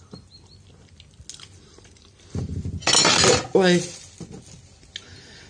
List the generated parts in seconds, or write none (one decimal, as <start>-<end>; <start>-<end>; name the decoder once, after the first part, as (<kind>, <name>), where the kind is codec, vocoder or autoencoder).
none

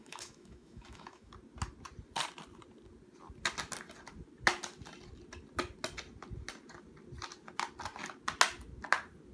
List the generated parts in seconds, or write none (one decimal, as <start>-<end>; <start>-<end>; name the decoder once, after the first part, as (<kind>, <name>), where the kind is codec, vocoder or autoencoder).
0.0-1.3 (autoencoder, DAC-VAE)

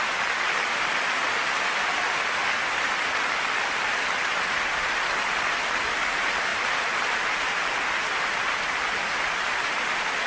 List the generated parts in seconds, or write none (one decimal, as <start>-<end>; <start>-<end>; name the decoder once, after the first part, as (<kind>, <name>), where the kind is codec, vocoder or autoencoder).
6.5-8.0 (vocoder, BigVGAN v2)